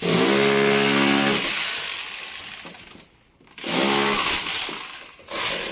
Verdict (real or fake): real